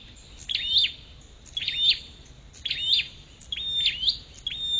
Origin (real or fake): real